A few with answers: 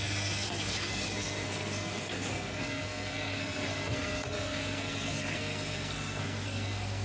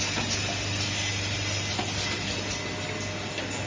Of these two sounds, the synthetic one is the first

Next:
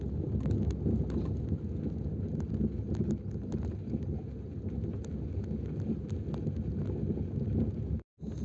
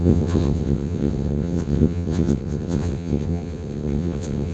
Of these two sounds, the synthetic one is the second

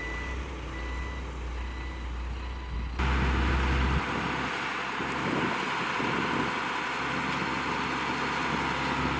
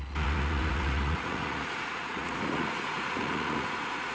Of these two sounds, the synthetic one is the second